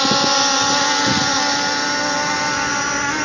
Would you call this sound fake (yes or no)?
no